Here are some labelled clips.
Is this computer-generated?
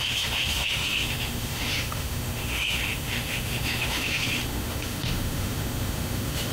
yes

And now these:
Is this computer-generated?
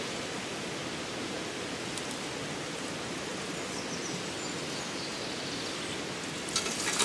no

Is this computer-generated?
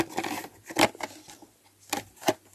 no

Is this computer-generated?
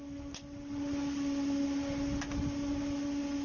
no